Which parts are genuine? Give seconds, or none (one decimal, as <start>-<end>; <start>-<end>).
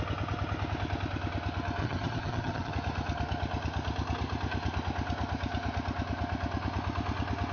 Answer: 0.0-1.8; 2.7-7.5